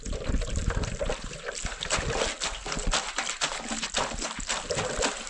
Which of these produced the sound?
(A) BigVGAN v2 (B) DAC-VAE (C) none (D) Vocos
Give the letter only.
C